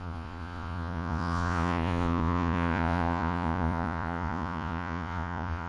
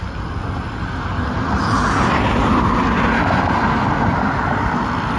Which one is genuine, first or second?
second